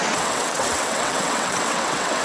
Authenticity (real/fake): fake